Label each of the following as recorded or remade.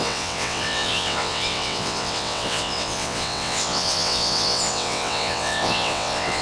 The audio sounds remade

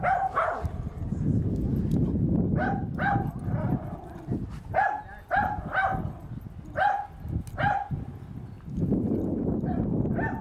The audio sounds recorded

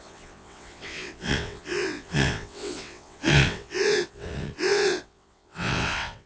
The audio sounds remade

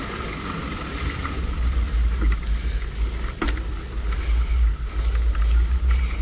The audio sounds recorded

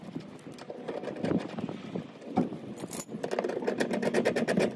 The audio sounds recorded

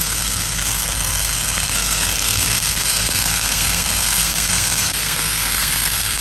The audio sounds remade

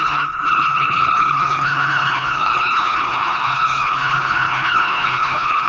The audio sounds remade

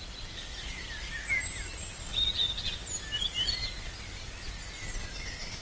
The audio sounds recorded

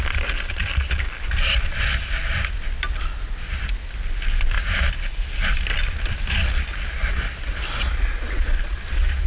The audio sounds recorded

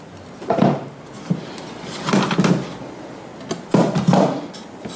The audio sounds recorded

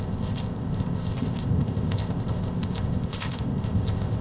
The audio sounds remade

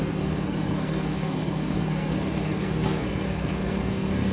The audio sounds remade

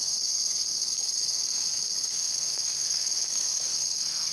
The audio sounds remade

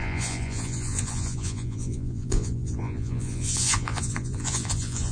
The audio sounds remade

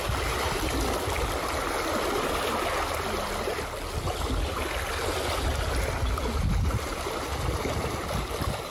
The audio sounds recorded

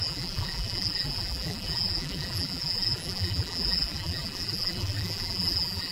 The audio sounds remade